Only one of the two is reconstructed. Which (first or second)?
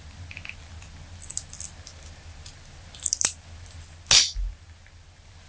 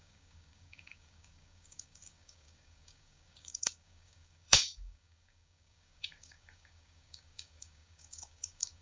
second